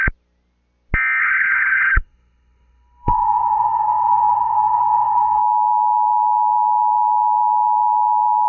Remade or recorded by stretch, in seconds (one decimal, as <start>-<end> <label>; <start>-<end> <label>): 0.0-1.2 recorded; 1.2-5.4 remade; 5.4-8.5 recorded